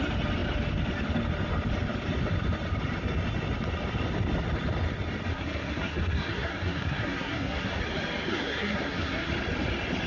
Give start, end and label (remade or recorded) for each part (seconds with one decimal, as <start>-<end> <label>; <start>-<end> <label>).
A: 0.0-5.3 recorded; 5.3-7.8 remade; 7.8-8.3 recorded; 8.3-9.3 remade; 9.3-10.1 recorded